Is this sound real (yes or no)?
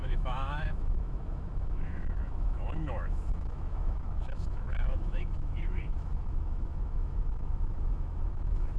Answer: no